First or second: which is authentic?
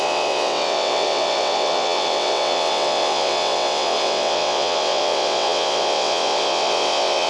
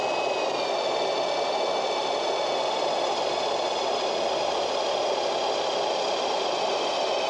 second